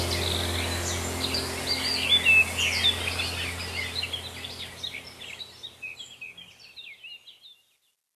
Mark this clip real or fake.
real